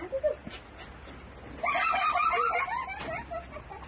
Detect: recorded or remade recorded